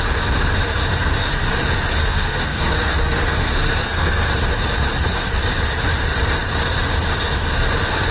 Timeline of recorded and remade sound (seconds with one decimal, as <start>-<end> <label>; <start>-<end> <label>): 0.0-2.0 recorded; 2.0-4.3 remade; 4.3-8.1 recorded